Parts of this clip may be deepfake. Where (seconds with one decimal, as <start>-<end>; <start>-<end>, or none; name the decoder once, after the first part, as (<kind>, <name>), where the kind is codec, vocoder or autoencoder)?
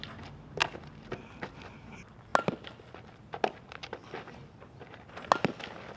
none